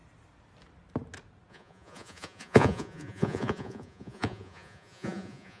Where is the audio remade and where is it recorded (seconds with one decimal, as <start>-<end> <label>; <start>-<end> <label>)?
0.0-1.5 recorded; 1.5-5.6 remade